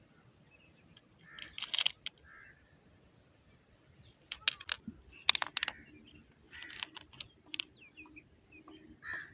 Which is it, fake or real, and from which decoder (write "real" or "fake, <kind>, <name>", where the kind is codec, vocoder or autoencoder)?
real